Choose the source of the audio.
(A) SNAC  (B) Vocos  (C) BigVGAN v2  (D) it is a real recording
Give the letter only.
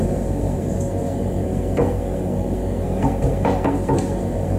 A